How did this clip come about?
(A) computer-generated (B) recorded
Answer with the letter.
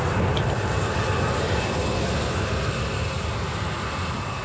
B